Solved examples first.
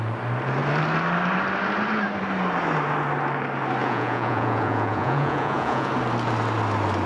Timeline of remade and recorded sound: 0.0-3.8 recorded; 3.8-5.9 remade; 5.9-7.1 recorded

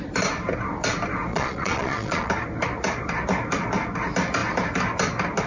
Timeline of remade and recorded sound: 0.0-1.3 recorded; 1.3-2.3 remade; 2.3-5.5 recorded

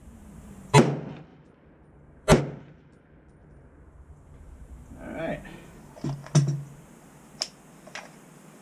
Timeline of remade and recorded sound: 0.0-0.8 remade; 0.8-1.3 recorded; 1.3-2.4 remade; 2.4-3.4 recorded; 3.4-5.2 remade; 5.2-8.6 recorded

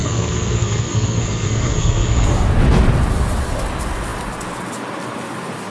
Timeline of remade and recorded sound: 0.0-2.3 remade; 2.3-5.7 recorded

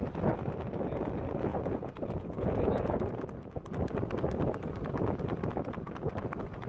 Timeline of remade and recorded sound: 0.0-1.5 recorded; 1.5-3.1 remade; 3.1-6.7 recorded